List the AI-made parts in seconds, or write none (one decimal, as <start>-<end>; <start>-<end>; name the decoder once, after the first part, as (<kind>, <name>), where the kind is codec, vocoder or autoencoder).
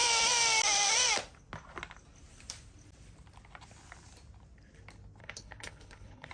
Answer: 5.2-6.3 (codec, HILCodec)